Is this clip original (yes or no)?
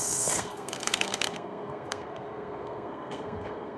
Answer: no